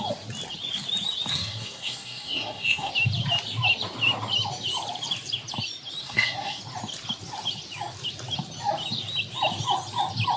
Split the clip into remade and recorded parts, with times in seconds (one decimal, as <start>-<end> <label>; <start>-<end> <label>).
0.0-1.3 recorded; 1.3-2.9 remade; 2.9-6.0 recorded; 6.0-6.6 remade; 6.6-10.4 recorded